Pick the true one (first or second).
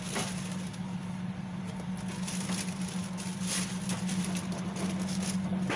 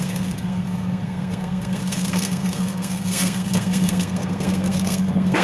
first